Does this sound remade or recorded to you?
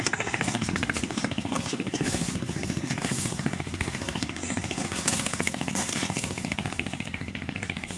remade